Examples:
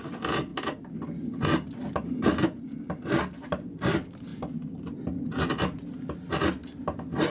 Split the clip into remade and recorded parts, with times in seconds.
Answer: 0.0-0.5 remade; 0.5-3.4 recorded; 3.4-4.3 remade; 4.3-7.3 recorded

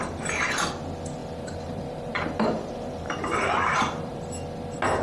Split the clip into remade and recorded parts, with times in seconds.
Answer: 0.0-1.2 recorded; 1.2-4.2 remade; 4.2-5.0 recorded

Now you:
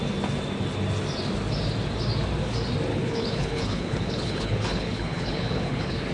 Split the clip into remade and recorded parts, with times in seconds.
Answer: 0.0-2.9 recorded; 2.9-6.1 remade